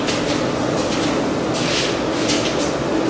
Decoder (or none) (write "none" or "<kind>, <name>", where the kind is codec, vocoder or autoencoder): none